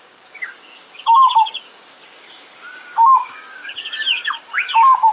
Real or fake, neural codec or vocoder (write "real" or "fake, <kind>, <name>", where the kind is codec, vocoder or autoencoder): fake, codec, DAC